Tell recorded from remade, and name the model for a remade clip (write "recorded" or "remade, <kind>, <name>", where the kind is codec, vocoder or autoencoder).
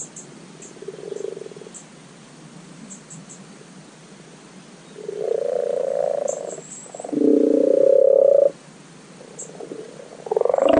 recorded